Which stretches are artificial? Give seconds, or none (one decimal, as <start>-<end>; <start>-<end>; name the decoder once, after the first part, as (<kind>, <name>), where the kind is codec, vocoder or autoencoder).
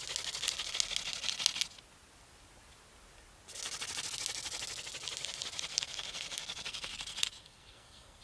5.7-8.2 (codec, SNAC)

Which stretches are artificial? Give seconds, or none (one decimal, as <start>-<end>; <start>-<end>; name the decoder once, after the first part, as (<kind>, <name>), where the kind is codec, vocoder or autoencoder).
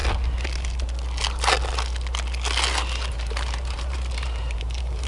3.1-5.1 (vocoder, BigVGAN v2)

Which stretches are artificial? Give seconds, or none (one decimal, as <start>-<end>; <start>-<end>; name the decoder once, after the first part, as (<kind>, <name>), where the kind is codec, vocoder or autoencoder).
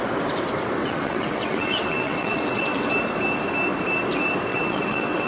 0.8-2.9 (vocoder, WaveNeXt); 4.5-5.3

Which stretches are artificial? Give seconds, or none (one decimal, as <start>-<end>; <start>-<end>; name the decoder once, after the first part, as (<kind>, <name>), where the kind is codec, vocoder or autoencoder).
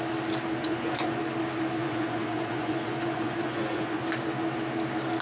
0.6-1.2 (vocoder, Vocos); 1.8-4.0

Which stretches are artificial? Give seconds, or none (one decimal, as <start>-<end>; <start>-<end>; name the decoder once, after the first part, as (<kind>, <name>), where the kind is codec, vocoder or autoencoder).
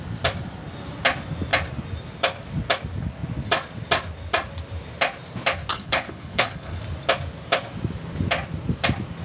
5.7-6.8 (codec, HILCodec)